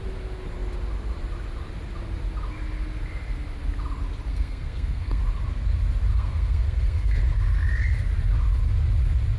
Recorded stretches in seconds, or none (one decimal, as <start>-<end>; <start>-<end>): 0.0-4.3; 5.2-6.1; 7.2-9.4

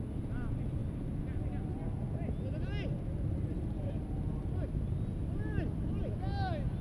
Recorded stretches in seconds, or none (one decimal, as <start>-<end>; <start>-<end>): 0.0-6.8

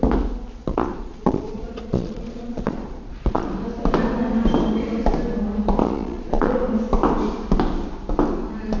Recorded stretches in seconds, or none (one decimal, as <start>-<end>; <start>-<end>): 0.0-0.6; 3.5-5.8; 6.6-8.8

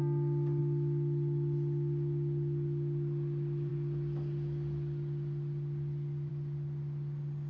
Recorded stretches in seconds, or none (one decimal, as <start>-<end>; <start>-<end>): 0.0-7.5

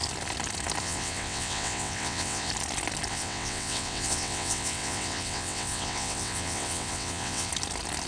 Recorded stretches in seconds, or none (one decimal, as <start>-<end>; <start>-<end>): 0.0-0.8; 2.5-3.1; 7.5-8.1

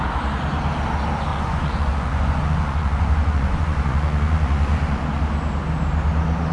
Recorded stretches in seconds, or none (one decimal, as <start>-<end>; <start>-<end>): 0.0-1.3; 5.2-6.5

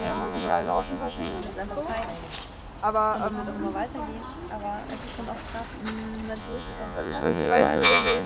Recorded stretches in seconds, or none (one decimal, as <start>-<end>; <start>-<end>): 1.4-6.4